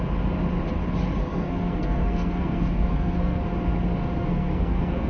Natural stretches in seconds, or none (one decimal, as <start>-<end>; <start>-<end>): 0.0-1.2; 3.4-4.2

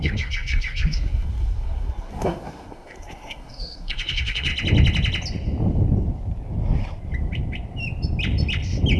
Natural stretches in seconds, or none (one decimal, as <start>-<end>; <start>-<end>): 4.5-9.0

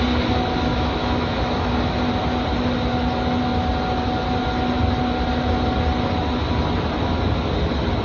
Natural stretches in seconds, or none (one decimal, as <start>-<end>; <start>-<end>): 0.0-0.7; 1.7-8.0

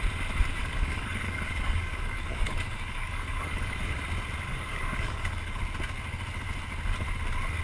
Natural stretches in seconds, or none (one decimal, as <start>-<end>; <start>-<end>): 0.0-0.6; 4.0-4.5; 5.6-7.6

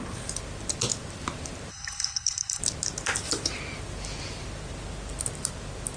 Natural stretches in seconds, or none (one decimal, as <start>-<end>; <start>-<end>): 0.0-1.7; 2.6-6.0

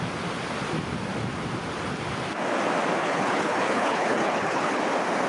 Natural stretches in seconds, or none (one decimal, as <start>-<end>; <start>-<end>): 0.0-3.0; 4.8-5.3

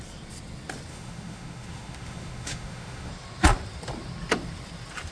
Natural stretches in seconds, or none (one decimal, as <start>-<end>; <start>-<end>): 0.0-0.9; 3.1-5.1

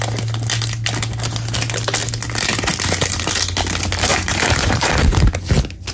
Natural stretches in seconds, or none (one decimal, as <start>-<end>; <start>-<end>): 0.0-4.1; 5.2-5.9